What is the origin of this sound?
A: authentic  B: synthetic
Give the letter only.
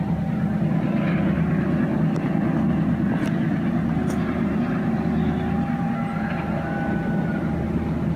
A